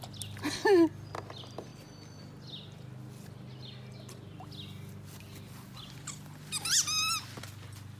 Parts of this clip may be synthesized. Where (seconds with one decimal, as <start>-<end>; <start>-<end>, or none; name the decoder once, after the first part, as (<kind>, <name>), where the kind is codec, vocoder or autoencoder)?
none